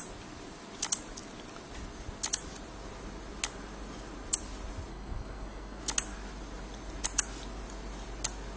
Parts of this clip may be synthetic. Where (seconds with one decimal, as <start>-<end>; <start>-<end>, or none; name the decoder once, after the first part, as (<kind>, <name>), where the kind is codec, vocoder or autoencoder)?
4.9-5.8 (codec, SNAC)